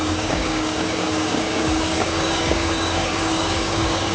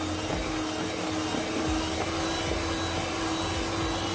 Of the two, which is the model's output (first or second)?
first